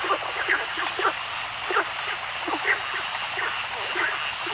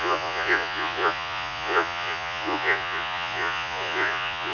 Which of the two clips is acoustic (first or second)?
first